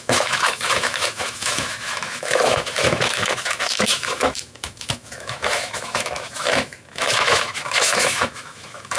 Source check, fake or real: fake